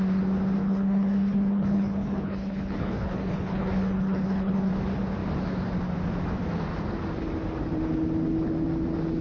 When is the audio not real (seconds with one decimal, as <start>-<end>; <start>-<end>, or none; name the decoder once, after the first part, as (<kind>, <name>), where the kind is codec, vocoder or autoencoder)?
0.6-4.7 (codec, HILCodec)